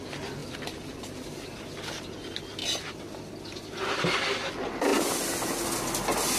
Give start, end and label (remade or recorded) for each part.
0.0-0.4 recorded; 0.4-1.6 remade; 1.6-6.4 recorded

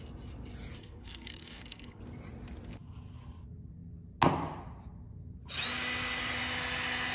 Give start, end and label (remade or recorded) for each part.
0.0-0.8 recorded; 0.8-2.0 remade; 2.0-7.1 recorded

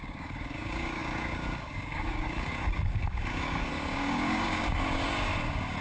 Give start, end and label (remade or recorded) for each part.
0.0-5.8 remade

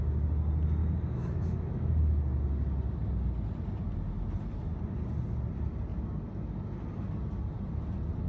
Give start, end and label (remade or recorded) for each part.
0.0-0.8 recorded; 0.8-2.0 remade; 2.0-8.3 recorded

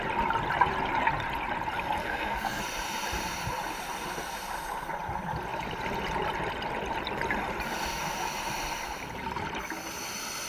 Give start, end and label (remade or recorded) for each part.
0.0-2.0 recorded; 2.0-2.6 remade; 2.6-10.5 recorded

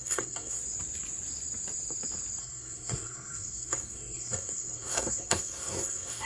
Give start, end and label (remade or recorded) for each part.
0.0-0.6 remade; 0.6-2.4 recorded; 2.4-6.3 remade